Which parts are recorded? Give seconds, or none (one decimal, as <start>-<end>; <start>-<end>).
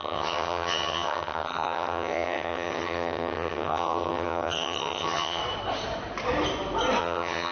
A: 5.4-7.0